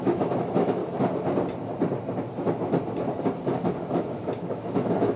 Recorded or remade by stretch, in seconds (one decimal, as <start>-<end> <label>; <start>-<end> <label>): 0.0-0.8 remade; 0.8-3.9 recorded; 3.9-5.2 remade